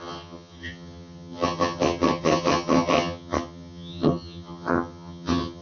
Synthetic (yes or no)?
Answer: yes